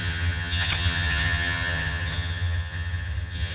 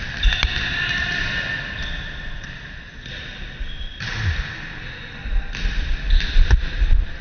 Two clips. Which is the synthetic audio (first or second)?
first